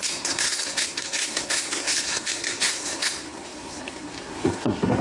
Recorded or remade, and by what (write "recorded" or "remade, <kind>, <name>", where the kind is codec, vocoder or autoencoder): remade, codec, SNAC